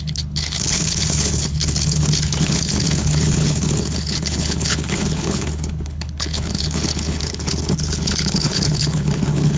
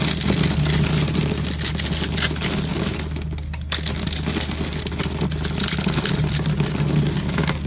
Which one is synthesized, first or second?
first